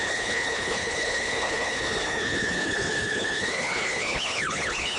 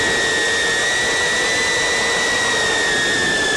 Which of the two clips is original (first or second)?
second